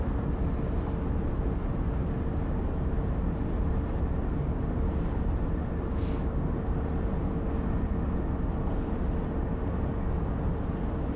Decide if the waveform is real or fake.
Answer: real